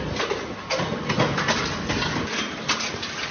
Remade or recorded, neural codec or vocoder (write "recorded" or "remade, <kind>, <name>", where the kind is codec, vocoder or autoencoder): recorded